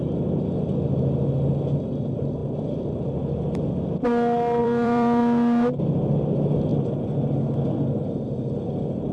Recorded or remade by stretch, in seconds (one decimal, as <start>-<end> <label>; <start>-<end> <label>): 0.0-4.6 recorded; 4.6-5.2 remade; 5.2-9.1 recorded